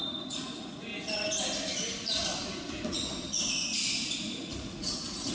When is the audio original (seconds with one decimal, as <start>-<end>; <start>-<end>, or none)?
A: 0.9-4.1